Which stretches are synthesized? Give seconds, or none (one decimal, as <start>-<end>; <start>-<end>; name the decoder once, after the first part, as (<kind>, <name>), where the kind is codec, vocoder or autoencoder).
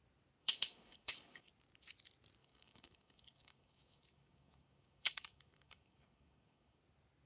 0.4-1.5 (codec, DAC); 2.4-6.8